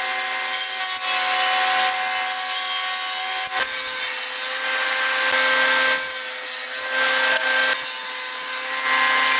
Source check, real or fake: real